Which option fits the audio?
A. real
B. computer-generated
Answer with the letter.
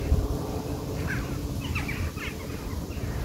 A